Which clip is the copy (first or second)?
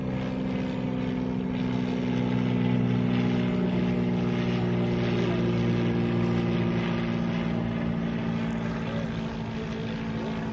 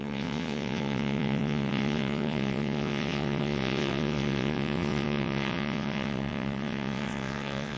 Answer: second